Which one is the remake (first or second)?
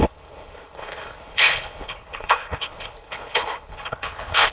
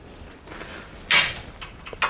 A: first